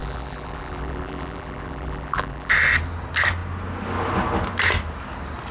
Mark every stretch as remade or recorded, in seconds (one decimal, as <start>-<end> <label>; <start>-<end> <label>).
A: 0.0-2.5 remade; 2.5-5.5 recorded